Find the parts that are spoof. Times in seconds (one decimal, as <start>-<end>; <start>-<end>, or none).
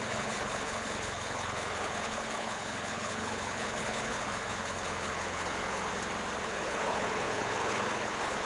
0.0-5.9; 6.4-8.5